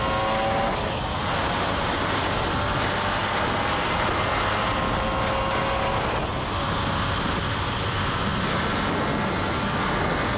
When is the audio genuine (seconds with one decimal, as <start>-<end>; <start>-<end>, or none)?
0.0-10.4